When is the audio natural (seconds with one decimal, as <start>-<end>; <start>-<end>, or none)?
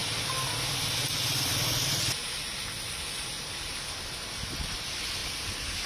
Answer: 2.2-4.7; 5.2-5.9